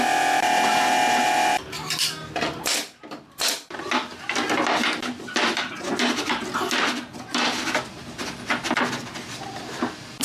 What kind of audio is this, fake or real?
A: real